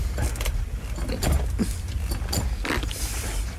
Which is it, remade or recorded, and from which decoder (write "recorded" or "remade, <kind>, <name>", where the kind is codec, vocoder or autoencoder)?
recorded